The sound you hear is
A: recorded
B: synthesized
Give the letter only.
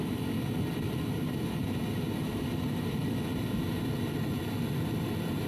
A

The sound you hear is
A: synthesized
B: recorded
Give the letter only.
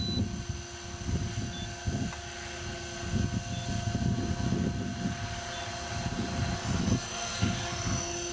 B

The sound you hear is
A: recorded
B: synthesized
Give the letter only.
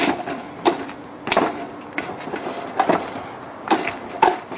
A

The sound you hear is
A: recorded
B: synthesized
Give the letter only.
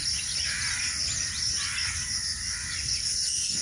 A